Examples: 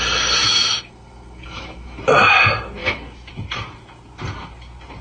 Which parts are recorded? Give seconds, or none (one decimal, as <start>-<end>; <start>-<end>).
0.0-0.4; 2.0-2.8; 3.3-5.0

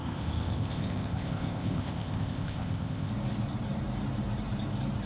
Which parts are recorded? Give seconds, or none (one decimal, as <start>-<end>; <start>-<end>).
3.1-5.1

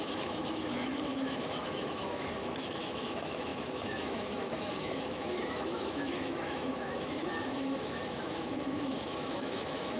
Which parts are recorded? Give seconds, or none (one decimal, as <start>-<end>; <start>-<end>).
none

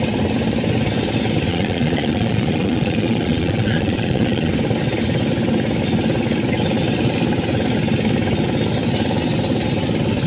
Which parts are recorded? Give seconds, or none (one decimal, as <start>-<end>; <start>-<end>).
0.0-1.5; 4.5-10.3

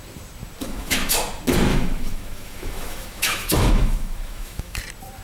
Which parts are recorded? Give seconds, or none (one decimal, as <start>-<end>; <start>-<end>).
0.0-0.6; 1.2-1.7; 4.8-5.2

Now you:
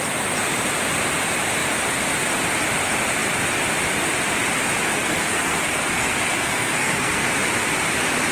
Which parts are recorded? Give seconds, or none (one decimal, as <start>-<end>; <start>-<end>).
0.0-4.9; 7.3-8.3

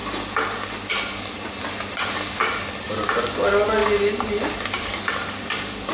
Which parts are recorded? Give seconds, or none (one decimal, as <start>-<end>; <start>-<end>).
0.0-5.9